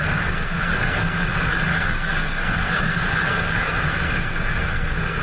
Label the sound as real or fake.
fake